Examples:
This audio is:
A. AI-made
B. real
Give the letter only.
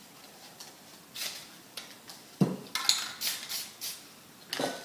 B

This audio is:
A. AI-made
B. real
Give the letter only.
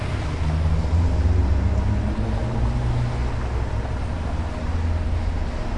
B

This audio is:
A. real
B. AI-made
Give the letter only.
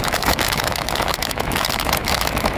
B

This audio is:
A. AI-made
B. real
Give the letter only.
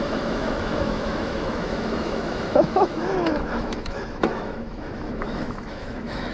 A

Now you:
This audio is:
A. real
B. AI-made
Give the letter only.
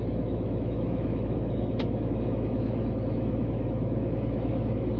B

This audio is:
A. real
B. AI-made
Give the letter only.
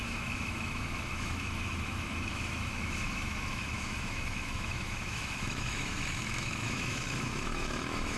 B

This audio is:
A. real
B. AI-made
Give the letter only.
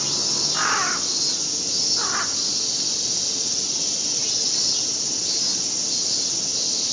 A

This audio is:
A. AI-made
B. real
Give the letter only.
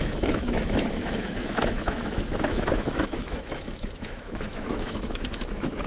A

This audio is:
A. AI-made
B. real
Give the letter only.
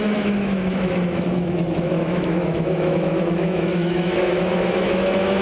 A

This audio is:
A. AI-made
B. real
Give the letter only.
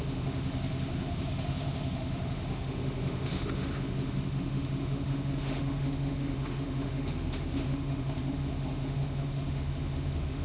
A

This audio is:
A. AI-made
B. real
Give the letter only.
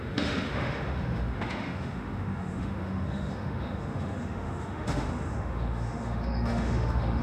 A